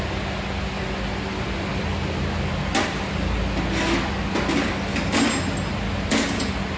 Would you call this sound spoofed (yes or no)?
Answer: no